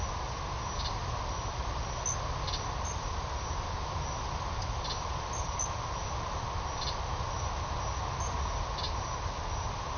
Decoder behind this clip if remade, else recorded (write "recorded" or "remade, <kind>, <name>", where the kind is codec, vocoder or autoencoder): recorded